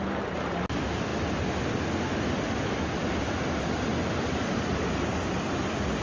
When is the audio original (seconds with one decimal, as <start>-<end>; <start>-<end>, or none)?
0.0-6.0